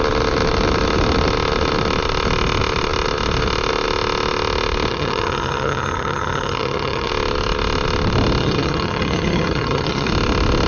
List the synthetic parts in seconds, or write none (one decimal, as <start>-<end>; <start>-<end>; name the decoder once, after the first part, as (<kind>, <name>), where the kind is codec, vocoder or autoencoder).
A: 4.9-7.1 (vocoder, HiFi-GAN); 8.4-10.1